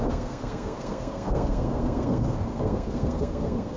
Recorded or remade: remade